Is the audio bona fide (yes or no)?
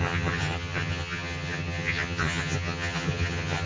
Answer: no